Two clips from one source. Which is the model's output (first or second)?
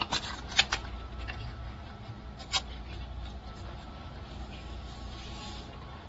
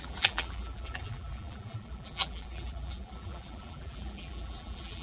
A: second